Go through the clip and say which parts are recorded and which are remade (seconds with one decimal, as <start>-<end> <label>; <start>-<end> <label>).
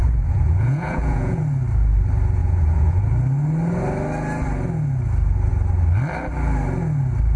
0.0-1.4 remade; 1.4-2.4 recorded; 2.4-3.0 remade; 3.0-7.4 recorded